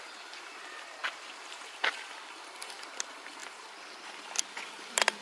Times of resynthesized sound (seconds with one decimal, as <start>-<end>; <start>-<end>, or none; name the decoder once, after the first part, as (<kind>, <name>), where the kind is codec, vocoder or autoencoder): none